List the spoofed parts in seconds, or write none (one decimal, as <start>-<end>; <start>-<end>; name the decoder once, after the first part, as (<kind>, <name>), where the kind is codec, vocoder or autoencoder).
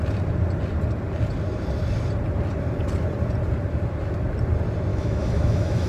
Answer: 4.9-5.9 (autoencoder, DAC-VAE)